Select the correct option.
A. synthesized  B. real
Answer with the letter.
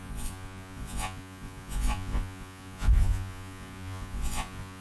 A